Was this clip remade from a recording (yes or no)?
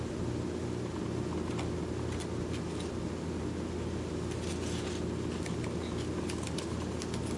no